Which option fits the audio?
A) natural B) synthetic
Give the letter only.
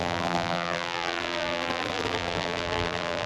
B